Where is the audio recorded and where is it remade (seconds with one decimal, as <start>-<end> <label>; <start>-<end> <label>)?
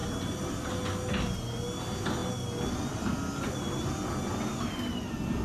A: 0.0-0.5 remade; 0.5-5.4 recorded